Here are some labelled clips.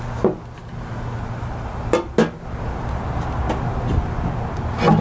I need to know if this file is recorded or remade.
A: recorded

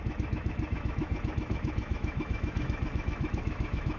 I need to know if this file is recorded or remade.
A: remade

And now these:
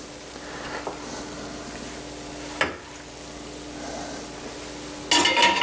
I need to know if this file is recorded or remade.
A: recorded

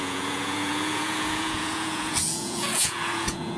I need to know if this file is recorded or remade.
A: remade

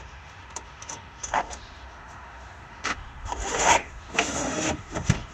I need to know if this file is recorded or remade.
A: remade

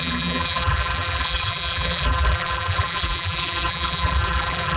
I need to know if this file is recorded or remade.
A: remade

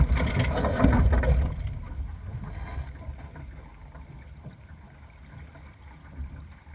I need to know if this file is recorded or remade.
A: recorded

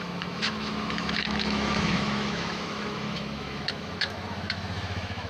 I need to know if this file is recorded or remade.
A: remade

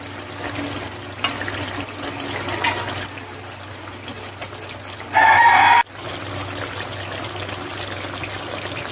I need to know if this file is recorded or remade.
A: recorded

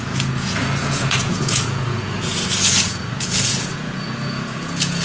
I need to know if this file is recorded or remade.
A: remade